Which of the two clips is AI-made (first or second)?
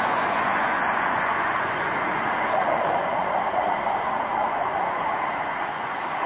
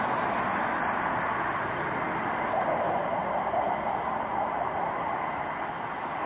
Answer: first